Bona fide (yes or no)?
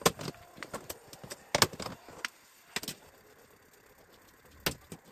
yes